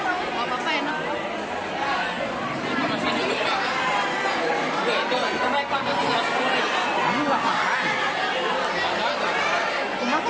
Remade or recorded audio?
recorded